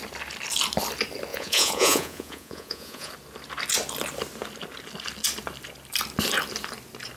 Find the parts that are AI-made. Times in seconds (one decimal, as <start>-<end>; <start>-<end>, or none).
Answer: 1.3-3.1